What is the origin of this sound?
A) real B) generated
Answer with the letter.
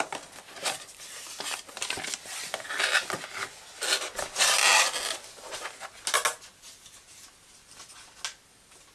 A